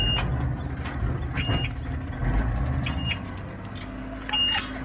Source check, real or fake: real